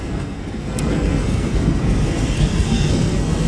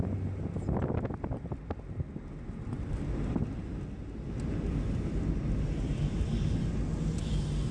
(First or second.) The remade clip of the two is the first